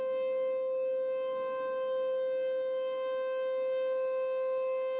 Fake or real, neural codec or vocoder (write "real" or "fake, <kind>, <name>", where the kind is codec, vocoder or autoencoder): real